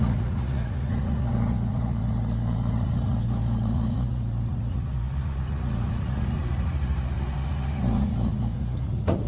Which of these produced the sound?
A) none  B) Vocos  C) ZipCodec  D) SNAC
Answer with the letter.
B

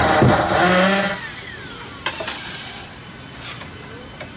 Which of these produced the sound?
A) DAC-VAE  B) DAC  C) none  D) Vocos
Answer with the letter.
C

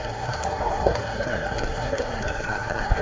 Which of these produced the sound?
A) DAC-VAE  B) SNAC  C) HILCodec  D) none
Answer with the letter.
B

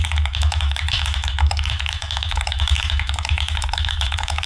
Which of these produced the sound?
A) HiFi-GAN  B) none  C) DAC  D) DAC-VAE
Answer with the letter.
D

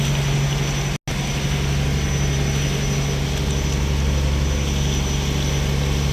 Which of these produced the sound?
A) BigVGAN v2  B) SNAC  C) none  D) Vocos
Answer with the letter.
C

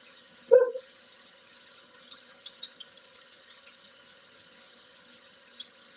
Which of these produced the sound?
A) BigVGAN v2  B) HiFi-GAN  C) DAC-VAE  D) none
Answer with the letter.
B